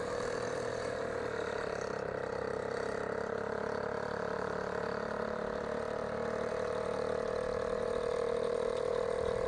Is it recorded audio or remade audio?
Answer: remade